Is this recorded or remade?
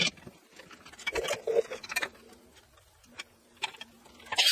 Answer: remade